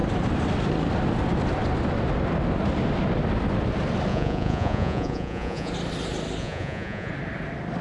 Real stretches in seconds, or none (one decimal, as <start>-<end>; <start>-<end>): 0.0-4.1; 5.7-6.4; 7.1-7.8